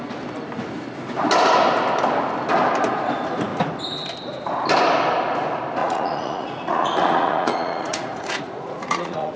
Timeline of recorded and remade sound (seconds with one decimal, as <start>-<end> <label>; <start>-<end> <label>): 0.0-5.8 recorded; 5.8-9.4 remade